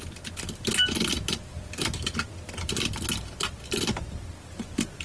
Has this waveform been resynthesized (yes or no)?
no